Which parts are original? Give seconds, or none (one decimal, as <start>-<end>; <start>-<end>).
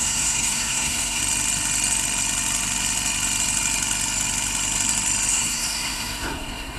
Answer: 1.2-5.3